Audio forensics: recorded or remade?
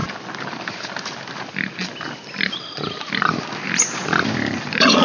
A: recorded